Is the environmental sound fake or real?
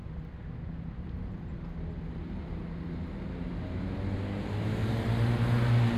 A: real